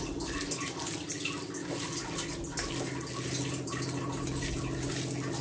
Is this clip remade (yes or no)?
no